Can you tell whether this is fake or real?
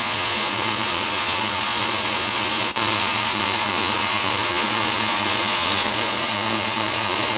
fake